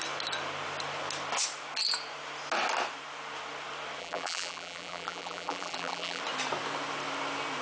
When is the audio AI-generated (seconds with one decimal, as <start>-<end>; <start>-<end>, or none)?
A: 4.0-6.2